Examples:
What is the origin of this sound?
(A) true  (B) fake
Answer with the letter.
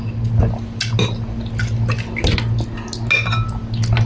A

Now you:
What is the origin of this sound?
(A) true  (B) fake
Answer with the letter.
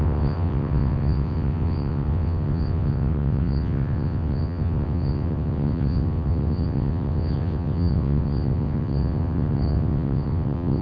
B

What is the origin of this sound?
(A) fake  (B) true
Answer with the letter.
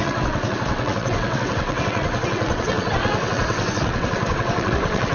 A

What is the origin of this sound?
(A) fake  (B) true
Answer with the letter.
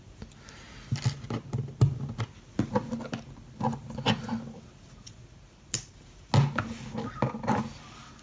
B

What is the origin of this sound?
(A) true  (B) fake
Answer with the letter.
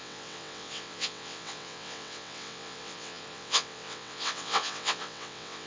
B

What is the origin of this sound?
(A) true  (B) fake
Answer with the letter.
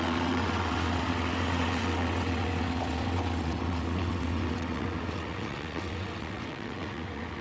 B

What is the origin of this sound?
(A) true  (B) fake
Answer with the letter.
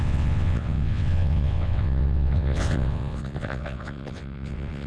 B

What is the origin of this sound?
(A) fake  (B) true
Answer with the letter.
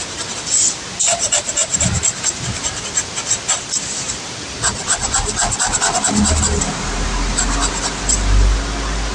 B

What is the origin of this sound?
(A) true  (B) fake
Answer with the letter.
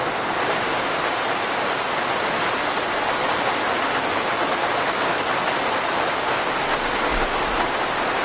A